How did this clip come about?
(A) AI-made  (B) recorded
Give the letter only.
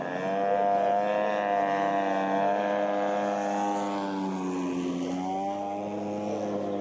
B